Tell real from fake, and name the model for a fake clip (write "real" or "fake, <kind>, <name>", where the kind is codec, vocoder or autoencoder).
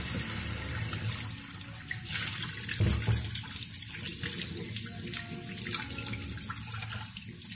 real